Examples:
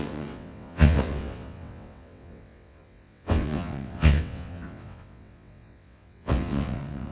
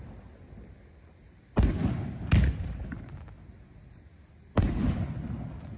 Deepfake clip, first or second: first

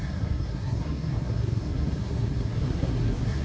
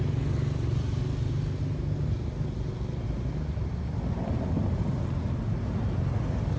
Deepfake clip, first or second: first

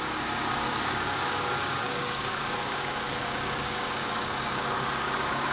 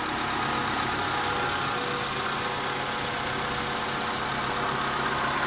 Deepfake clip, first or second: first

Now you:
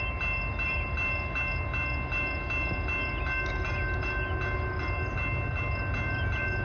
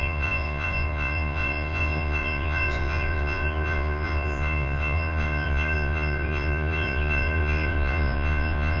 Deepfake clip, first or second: second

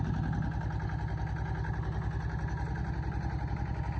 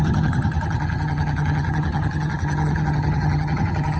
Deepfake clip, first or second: second